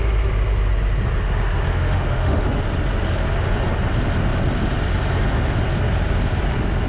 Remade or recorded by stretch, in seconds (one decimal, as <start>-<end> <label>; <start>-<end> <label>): 0.0-1.7 recorded; 1.7-2.6 remade; 2.6-6.9 recorded